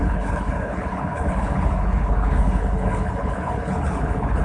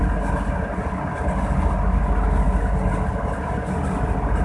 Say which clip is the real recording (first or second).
second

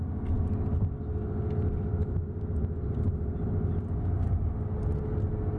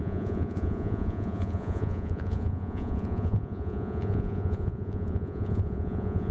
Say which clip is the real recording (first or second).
first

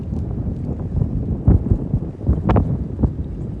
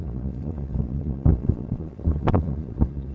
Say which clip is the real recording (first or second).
first